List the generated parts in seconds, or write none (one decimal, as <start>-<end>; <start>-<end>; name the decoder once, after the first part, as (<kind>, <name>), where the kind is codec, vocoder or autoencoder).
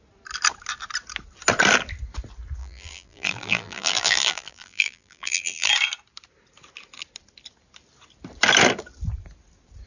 2.6-5.7 (vocoder, BigVGAN v2)